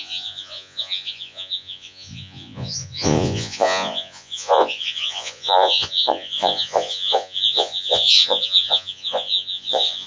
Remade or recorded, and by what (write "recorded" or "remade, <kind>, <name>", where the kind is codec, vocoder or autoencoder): remade, vocoder, Vocos